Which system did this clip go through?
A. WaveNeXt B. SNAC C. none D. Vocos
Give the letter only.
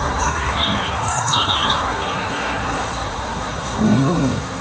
B